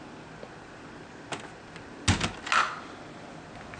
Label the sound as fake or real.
real